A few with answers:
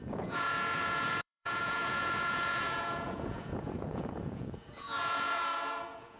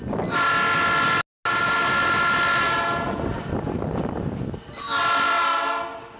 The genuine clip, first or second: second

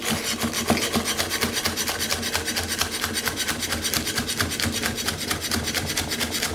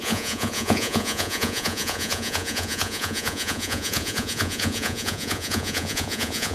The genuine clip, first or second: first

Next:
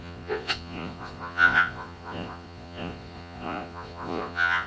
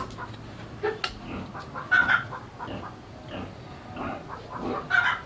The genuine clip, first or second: second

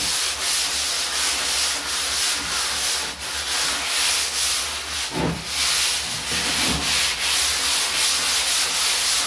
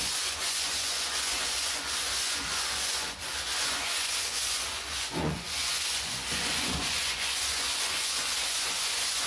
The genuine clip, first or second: first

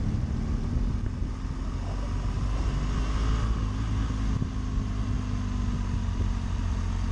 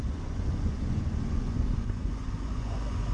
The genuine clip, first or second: first